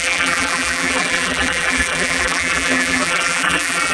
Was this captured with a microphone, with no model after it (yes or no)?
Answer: no